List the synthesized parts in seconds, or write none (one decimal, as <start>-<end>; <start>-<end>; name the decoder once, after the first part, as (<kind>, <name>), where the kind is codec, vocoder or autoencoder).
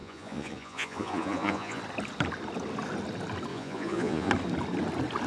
0.0-1.8 (vocoder, Vocos); 3.5-4.3